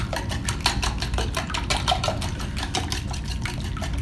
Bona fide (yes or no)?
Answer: yes